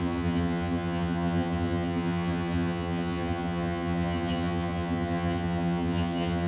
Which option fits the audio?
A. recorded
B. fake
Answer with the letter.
B